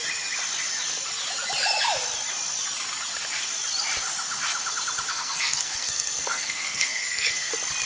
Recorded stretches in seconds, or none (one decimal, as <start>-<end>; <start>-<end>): 0.0-5.1; 7.5-7.9